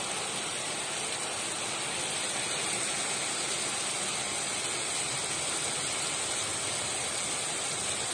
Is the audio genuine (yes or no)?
yes